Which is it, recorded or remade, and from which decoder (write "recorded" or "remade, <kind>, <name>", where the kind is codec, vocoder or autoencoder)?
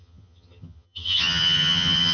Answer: remade, vocoder, HiFi-GAN